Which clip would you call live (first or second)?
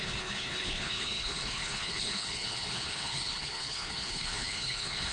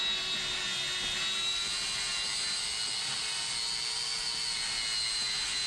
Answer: second